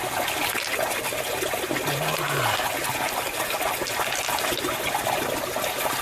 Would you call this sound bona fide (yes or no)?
yes